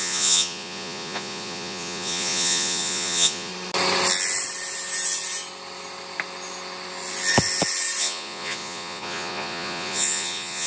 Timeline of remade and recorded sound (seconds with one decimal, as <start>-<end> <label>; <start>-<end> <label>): 0.0-3.5 remade; 3.5-8.0 recorded; 8.0-10.7 remade